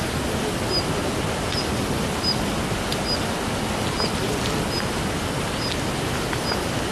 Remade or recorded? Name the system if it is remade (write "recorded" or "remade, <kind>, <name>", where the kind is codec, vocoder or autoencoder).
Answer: recorded